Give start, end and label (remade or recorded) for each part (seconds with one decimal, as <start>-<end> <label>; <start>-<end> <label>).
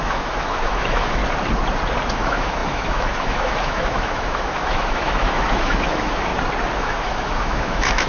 0.0-1.2 remade; 1.2-2.1 recorded; 2.1-6.3 remade; 6.3-6.8 recorded; 6.8-8.1 remade